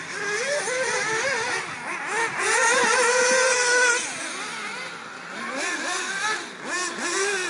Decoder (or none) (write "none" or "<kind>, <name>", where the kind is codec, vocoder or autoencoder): none